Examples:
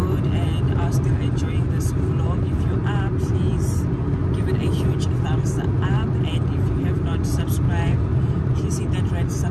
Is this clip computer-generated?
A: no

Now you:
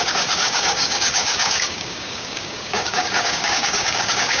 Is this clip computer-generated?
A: yes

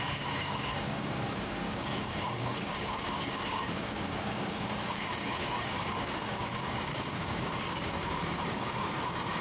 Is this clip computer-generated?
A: yes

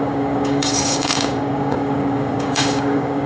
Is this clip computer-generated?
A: yes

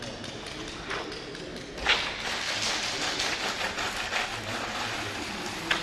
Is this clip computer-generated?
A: no